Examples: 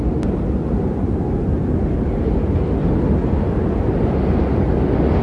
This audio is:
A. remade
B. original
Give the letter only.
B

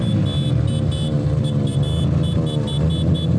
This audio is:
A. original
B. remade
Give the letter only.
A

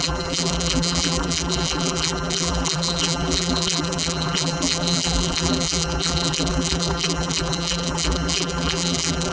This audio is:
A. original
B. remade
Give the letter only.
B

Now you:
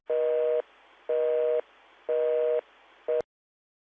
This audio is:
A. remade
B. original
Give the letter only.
B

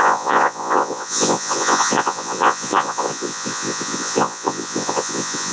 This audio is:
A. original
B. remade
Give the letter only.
B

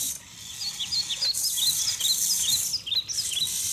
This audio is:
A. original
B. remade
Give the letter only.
A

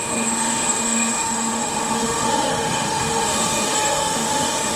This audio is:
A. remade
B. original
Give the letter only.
A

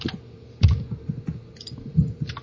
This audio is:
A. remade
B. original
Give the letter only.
B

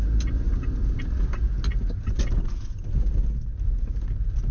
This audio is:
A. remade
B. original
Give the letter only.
B